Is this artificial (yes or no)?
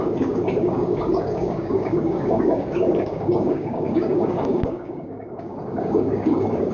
yes